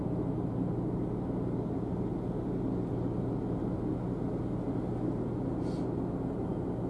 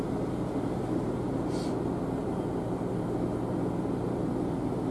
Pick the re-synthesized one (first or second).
second